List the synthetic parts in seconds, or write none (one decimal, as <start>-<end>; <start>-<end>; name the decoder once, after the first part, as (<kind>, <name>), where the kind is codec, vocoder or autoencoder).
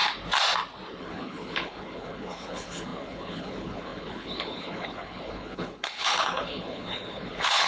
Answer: 1.0-7.7 (codec, HILCodec)